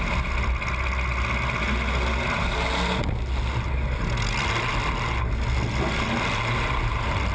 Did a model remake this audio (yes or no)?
no